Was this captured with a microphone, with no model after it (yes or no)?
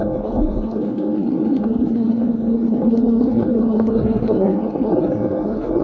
no